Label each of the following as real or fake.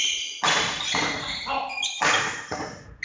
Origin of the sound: real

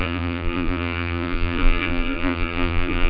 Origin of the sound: fake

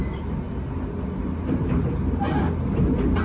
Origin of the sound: real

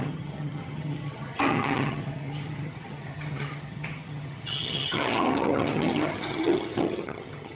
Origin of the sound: fake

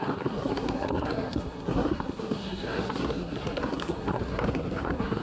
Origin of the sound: fake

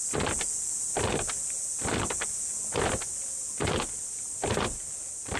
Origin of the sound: real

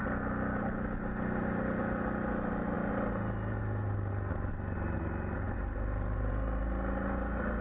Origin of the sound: real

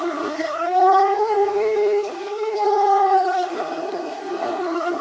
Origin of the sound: fake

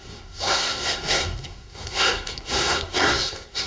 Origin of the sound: fake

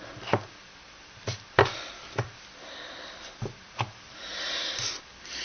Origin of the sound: fake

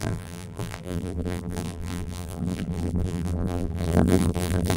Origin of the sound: fake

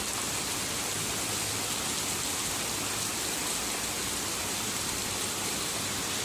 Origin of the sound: real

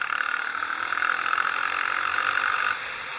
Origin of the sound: real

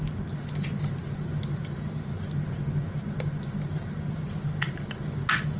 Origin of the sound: real